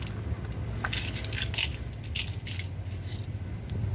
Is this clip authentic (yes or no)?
yes